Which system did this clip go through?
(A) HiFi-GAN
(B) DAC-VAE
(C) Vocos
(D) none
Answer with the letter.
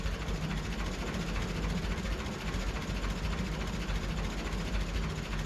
D